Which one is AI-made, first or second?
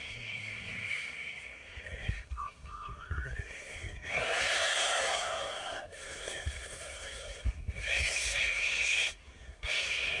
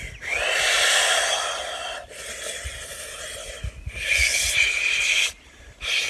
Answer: first